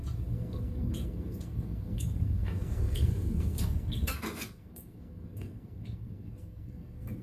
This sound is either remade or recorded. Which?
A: remade